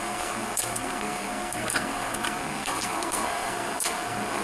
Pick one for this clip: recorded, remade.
remade